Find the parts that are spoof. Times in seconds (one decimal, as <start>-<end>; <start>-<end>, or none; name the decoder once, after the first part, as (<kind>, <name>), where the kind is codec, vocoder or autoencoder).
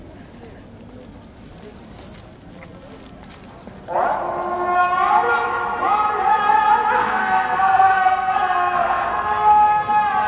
7.0-9.9 (codec, SNAC)